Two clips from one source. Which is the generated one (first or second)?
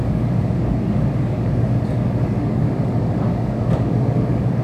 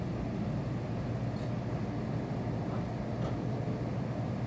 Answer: first